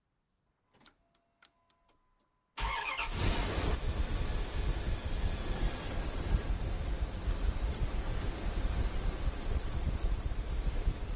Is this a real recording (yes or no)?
yes